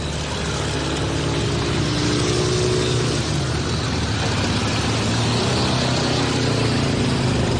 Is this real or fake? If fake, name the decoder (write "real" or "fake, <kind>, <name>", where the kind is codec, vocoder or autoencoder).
real